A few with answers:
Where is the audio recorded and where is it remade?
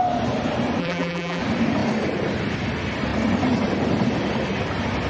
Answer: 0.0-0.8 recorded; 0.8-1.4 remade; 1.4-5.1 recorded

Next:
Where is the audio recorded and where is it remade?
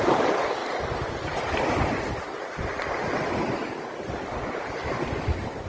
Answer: 0.0-0.6 remade; 0.6-1.8 recorded; 1.8-5.7 remade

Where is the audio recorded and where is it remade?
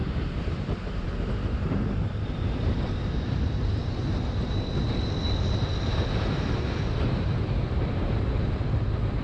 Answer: 0.0-9.2 remade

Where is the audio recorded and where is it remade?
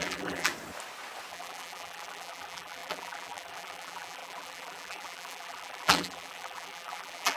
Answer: 0.0-0.5 remade; 0.5-1.3 recorded; 1.3-7.4 remade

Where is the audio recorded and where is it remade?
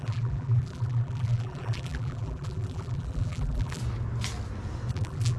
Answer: 0.0-3.8 remade; 3.8-4.9 recorded; 4.9-5.4 remade